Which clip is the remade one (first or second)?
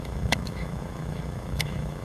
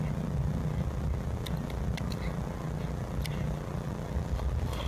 first